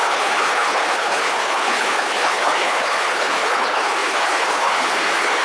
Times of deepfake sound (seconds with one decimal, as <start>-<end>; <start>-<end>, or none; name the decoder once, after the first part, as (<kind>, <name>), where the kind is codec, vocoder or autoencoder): 0.0-5.4 (codec, HILCodec)